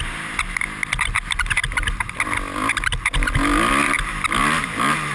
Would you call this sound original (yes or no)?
yes